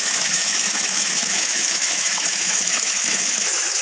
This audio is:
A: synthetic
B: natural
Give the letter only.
A